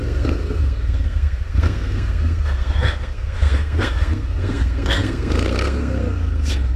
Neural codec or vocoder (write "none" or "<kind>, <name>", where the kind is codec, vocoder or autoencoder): codec, SNAC